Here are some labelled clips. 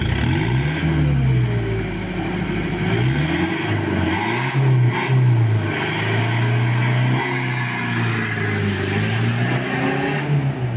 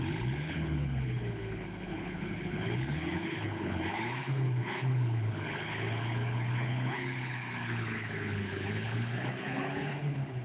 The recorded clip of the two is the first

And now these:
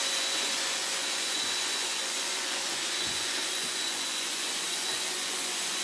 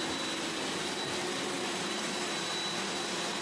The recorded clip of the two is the second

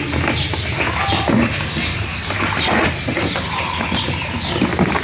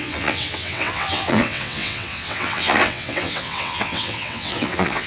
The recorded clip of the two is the first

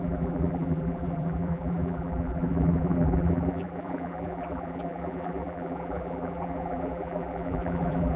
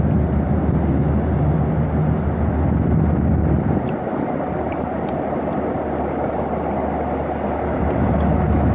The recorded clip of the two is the second